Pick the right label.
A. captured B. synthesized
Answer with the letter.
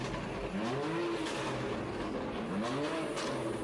A